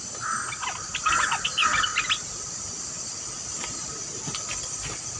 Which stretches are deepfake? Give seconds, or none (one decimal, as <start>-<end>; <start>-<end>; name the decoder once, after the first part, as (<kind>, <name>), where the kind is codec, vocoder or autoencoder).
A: 0.0-1.9 (vocoder, BigVGAN v2); 2.8-5.2